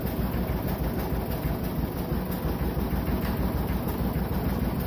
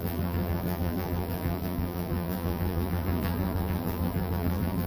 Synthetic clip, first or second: second